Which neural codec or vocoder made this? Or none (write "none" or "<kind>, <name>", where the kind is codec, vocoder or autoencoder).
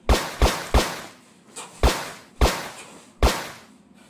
none